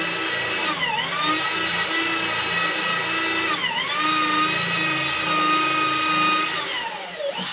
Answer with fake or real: real